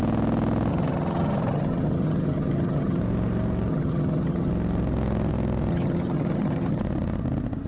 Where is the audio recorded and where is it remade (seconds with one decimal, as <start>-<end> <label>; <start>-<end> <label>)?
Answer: 0.0-0.7 recorded; 0.7-3.0 remade; 3.0-3.7 recorded; 3.7-4.5 remade; 4.5-5.7 recorded; 5.7-6.8 remade; 6.8-7.7 recorded